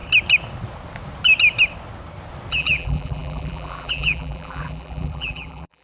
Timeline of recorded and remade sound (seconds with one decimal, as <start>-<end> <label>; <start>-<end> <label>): 0.0-2.5 recorded; 2.5-5.8 remade